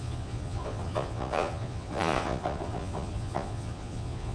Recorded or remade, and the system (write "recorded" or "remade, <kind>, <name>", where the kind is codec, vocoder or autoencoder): remade, vocoder, Vocos